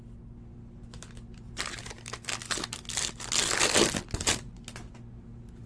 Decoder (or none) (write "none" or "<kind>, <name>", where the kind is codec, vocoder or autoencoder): none